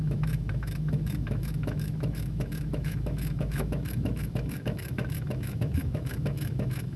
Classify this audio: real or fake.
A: fake